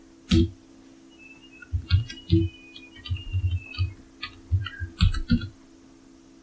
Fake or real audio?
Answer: real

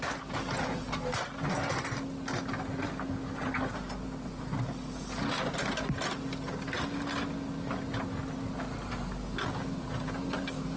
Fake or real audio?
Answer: real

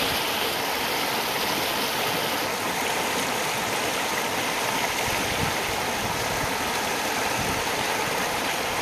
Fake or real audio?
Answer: real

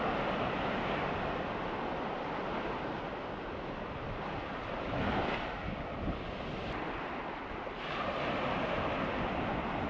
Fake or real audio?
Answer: real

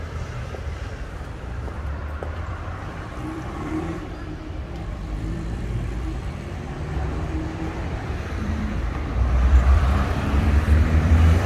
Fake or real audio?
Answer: fake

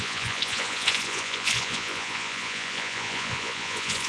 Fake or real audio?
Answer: fake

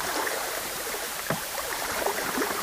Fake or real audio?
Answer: fake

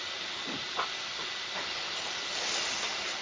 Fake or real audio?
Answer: real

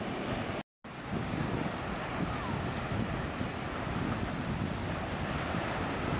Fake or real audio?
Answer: real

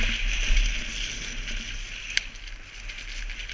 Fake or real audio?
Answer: real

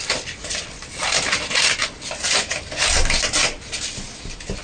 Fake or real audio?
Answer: real